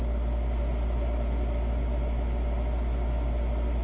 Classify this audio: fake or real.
real